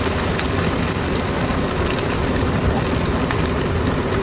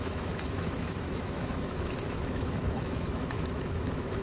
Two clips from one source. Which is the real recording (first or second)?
first